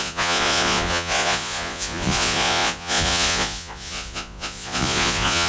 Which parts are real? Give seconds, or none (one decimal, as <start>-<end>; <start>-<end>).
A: none